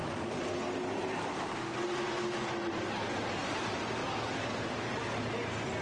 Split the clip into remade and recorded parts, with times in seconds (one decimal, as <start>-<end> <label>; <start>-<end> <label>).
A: 0.0-5.8 recorded